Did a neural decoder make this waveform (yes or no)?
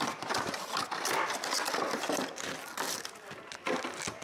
no